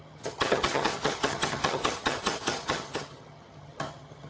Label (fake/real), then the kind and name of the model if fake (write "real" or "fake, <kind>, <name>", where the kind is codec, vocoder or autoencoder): fake, vocoder, HiFi-GAN